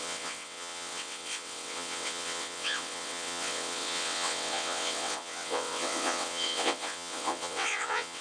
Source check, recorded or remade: remade